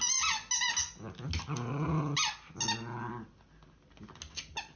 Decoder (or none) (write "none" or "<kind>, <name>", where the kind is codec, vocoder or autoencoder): none